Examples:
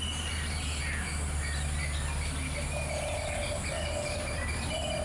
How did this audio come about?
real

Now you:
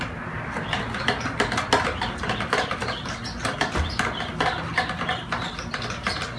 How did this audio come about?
real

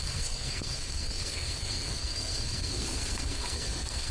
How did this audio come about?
fake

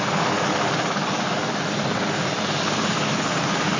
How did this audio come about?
real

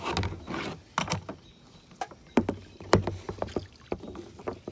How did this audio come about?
real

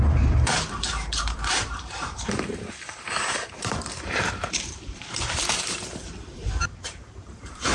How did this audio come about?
fake